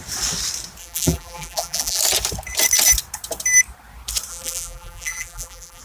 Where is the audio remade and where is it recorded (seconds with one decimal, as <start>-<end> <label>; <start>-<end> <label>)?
0.0-0.8 recorded; 0.8-2.0 remade; 2.0-4.3 recorded; 4.3-5.8 remade